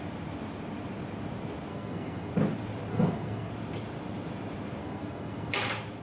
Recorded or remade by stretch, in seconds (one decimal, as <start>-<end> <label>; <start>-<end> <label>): 0.0-1.7 recorded; 1.7-2.3 remade; 2.3-2.9 recorded; 2.9-3.5 remade; 3.5-4.8 recorded; 4.8-5.5 remade; 5.5-6.0 recorded